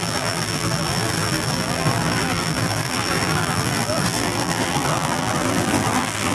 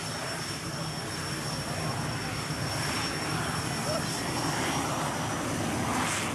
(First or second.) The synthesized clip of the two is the first